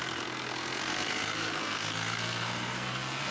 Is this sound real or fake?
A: fake